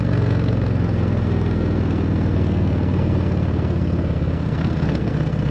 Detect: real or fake fake